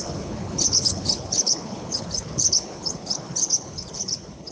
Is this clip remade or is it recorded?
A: remade